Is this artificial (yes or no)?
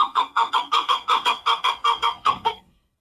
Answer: yes